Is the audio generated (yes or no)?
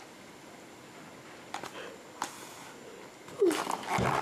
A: no